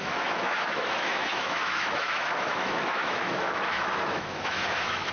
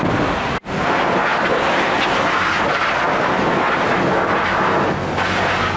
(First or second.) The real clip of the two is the second